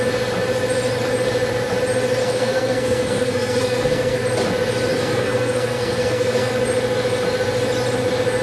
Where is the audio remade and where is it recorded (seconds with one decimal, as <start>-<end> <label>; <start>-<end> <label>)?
0.0-2.2 recorded; 2.2-4.2 remade; 4.2-4.9 recorded; 4.9-6.5 remade; 6.5-8.4 recorded